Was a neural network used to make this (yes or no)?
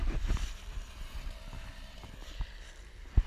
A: yes